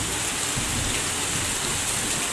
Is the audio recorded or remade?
recorded